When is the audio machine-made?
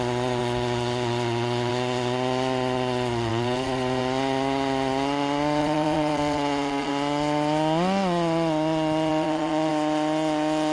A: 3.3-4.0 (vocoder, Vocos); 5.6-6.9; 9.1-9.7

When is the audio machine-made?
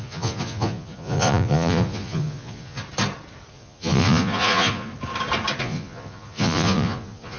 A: 0.0-2.8 (vocoder, Vocos); 3.5-4.9; 5.6-7.4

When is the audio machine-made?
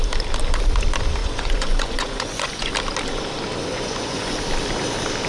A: 1.2-2.7 (vocoder, Vocos); 3.7-4.4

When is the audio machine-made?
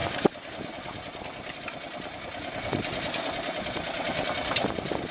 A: none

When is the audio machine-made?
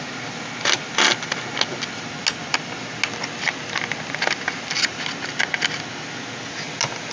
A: none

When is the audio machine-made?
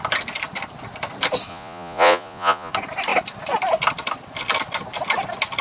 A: 1.5-2.7 (vocoder, Vocos)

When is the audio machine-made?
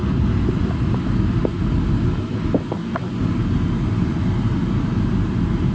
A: none